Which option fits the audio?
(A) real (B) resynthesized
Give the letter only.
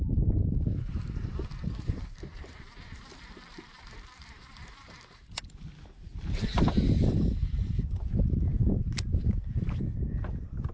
B